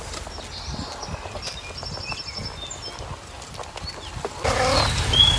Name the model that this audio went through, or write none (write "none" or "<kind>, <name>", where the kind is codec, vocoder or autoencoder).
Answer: none